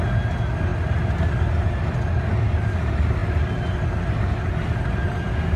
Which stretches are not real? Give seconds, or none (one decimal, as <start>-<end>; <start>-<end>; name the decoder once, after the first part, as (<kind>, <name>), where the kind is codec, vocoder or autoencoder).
none